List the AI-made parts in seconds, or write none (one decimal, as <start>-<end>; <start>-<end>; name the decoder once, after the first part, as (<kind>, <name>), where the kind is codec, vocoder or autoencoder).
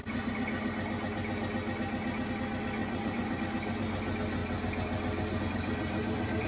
2.8-3.4 (vocoder, Vocos)